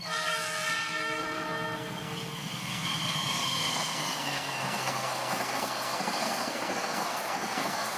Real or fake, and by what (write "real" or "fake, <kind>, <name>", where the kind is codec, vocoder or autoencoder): fake, codec, SNAC